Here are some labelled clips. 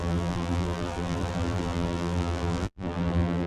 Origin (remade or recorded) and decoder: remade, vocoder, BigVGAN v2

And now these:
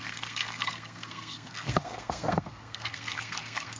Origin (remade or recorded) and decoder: remade, codec, SNAC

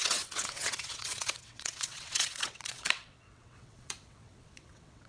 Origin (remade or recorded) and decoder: remade, vocoder, WaveNeXt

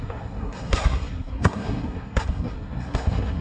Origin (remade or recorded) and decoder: remade, codec, SNAC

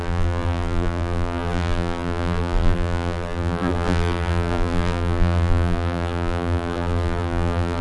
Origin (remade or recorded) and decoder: remade, vocoder, BigVGAN v2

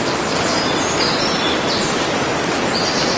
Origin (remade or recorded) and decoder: recorded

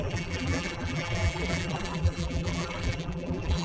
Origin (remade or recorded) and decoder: remade, vocoder, BigVGAN v2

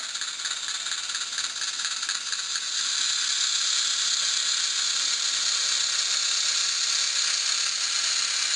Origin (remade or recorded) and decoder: recorded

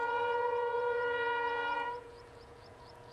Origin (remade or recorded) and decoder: remade, vocoder, Vocos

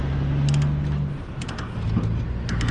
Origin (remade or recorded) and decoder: recorded